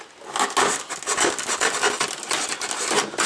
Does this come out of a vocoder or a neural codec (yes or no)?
no